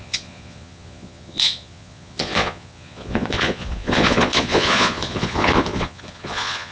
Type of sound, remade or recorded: remade